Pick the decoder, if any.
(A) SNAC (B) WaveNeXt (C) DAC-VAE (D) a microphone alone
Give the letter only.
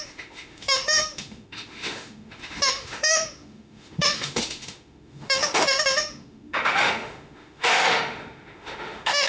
C